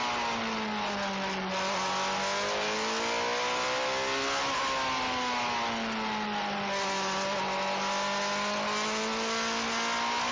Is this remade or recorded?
recorded